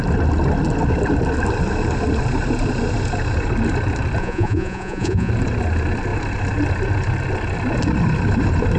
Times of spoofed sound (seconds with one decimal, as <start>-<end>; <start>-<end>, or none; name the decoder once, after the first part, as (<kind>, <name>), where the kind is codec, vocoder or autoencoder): 4.2-5.3 (vocoder, Vocos)